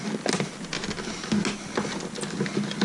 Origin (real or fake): real